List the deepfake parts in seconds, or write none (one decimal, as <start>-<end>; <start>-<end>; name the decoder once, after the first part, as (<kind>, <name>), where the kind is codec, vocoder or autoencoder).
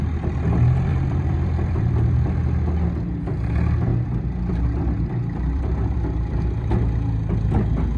0.9-2.4 (vocoder, BigVGAN v2); 3.9-6.7